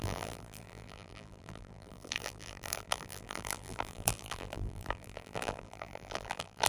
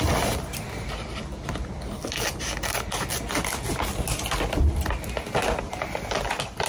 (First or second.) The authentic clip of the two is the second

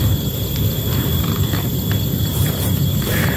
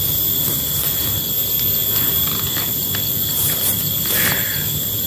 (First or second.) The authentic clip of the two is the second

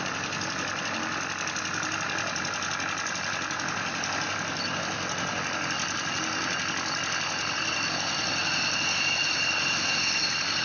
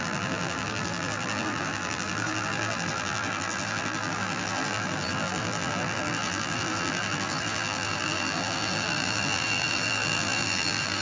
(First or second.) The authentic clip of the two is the first